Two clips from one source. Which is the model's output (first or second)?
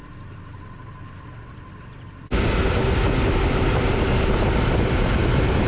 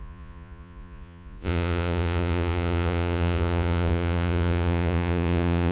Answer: second